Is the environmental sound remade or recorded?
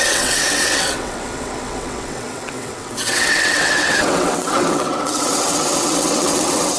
remade